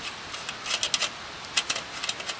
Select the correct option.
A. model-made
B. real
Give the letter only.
B